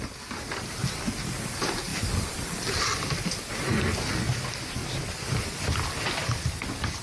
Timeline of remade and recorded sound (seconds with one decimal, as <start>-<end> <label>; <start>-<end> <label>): 0.0-1.9 recorded; 1.9-2.8 remade; 2.8-7.0 recorded